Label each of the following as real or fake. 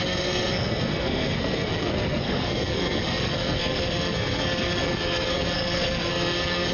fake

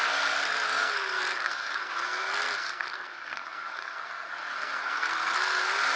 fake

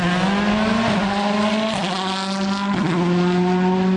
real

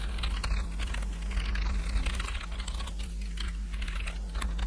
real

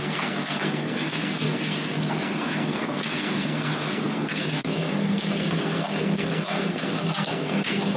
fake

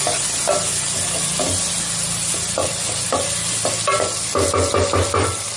real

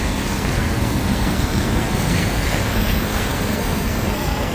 fake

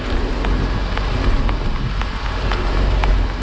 real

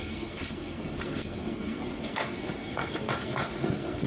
fake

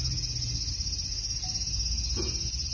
real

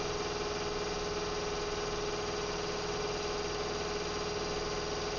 real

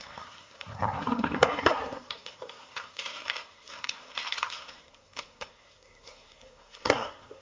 fake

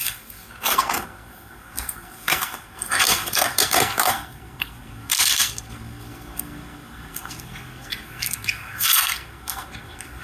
fake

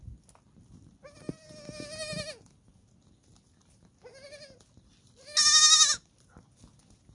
real